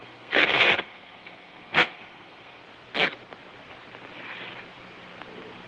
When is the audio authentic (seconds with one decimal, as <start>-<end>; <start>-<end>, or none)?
2.6-5.7